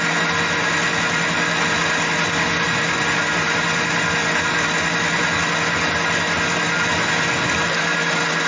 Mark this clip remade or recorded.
recorded